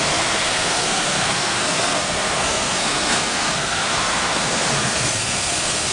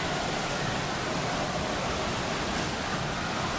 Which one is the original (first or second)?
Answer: second